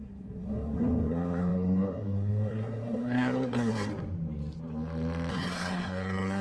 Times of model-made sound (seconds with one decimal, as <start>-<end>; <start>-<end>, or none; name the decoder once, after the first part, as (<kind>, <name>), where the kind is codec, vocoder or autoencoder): 0.0-3.9 (codec, SNAC); 5.3-6.4